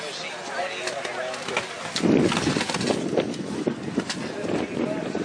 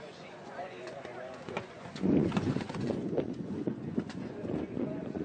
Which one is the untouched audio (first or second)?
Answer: first